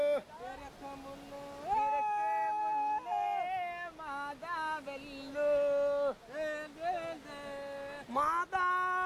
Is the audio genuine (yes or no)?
yes